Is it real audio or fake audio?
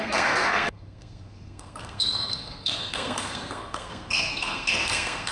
fake